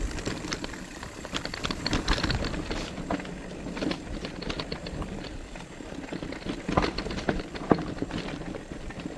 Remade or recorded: remade